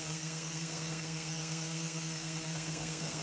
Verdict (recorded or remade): remade